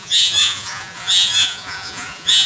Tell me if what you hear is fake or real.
fake